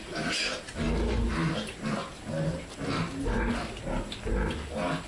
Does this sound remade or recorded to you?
recorded